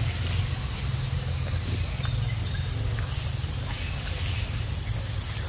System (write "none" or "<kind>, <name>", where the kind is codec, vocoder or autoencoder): none